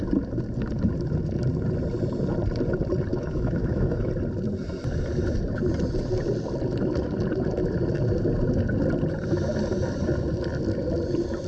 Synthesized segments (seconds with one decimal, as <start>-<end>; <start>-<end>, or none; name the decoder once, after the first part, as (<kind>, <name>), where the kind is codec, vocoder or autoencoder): 3.1-4.1 (autoencoder, DAC-VAE)